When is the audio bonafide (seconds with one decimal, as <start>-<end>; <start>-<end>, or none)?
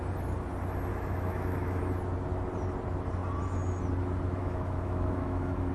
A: 0.0-0.9; 1.8-4.4